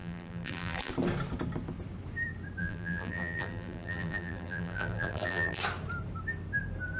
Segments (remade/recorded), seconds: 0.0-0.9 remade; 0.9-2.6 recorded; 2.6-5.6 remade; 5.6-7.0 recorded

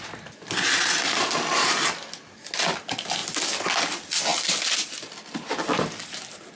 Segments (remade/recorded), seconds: 0.0-6.6 recorded

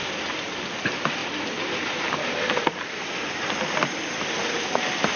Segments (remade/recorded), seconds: 0.0-1.2 recorded; 1.2-3.1 remade; 3.1-5.2 recorded

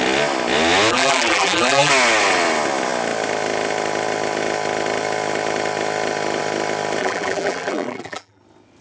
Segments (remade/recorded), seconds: 0.0-0.9 recorded; 0.9-1.9 remade; 1.9-7.0 recorded; 7.0-8.4 remade; 8.4-8.8 recorded

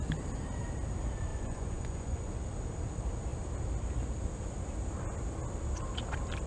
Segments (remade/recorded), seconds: 0.0-1.3 recorded; 1.3-2.3 remade; 2.3-6.5 recorded